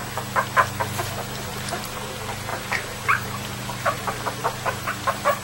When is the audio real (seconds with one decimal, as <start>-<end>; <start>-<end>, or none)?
0.0-1.5